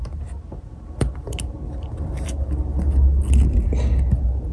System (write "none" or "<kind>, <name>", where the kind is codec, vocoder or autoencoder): none